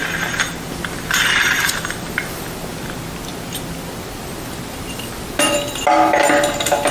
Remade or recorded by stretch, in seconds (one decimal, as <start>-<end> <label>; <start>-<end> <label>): 0.0-6.9 recorded